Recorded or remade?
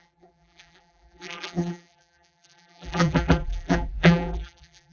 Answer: remade